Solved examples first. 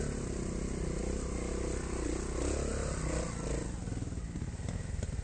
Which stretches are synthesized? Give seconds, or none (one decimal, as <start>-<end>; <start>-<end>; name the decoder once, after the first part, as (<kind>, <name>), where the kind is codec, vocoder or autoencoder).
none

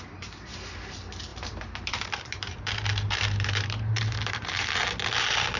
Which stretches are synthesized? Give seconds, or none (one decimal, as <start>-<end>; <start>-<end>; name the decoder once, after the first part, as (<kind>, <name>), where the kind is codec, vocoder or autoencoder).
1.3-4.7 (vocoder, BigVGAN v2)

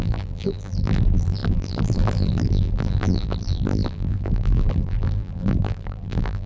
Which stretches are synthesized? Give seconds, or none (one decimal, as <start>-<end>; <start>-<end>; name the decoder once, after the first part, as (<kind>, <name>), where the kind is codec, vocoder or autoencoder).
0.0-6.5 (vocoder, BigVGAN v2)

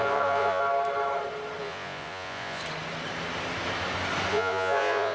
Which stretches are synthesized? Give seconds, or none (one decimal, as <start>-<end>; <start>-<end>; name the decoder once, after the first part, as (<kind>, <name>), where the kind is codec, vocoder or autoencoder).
0.0-0.6 (vocoder, Vocos); 1.6-2.6; 4.3-5.1